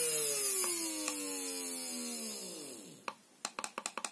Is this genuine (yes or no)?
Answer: yes